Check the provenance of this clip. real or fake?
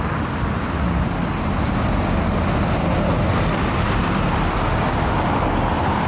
real